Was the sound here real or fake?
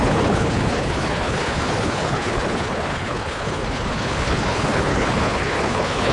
fake